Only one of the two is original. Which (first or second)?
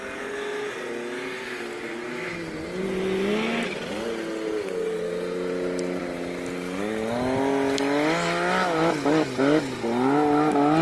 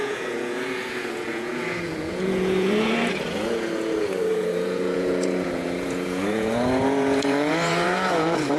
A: first